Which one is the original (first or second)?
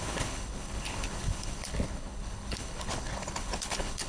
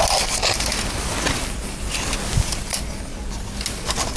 second